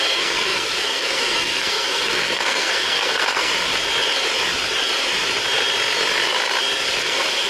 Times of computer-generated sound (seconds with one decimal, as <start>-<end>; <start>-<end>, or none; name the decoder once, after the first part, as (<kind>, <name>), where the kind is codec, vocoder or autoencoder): 0.0-3.5 (codec, SNAC); 7.0-7.5